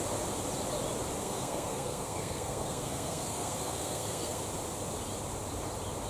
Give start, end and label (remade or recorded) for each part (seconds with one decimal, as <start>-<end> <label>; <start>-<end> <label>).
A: 0.0-1.2 recorded; 1.2-4.4 remade; 4.4-6.1 recorded